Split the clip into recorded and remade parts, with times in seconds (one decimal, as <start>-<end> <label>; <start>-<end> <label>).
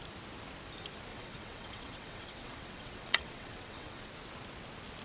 0.0-1.1 recorded; 1.1-4.1 remade; 4.1-5.0 recorded